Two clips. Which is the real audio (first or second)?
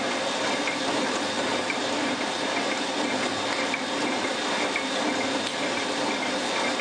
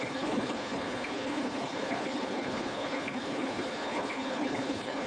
first